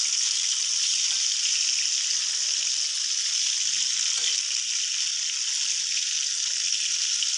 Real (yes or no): yes